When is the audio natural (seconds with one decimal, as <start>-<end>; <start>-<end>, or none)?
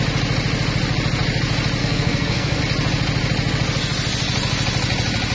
0.0-1.8; 2.6-5.3